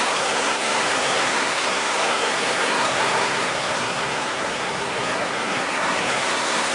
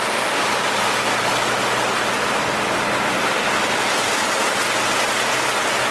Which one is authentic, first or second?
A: second